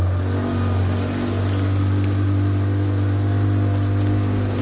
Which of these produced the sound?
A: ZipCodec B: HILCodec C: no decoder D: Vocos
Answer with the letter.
C